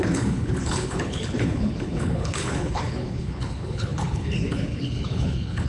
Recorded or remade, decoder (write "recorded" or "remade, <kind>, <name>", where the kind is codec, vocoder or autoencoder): remade, codec, HILCodec